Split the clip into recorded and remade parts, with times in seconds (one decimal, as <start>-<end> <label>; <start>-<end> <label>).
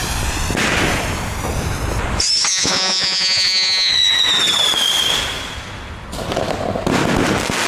0.0-2.5 recorded; 2.5-3.9 remade; 3.9-7.7 recorded